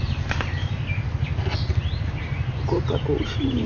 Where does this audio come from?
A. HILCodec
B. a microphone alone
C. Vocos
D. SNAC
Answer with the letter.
B